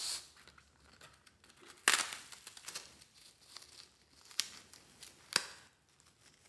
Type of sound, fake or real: real